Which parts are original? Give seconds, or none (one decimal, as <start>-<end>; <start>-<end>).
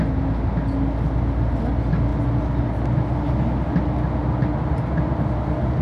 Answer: 0.0-5.8